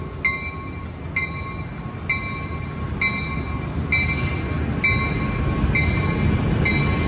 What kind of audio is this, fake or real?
real